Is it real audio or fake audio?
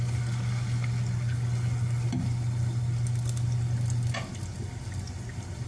real